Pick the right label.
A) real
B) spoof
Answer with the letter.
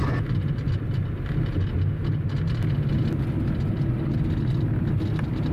A